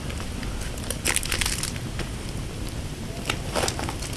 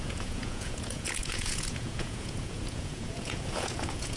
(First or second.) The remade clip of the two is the second